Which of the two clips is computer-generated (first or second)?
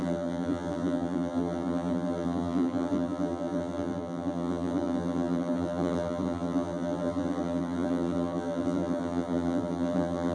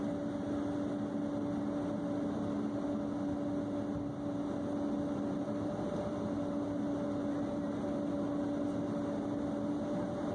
first